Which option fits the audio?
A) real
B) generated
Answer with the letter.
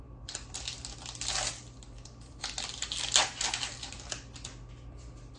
A